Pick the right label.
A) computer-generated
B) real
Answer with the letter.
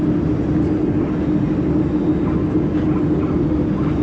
B